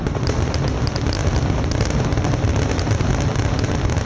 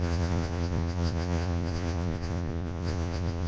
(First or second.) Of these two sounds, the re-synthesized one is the second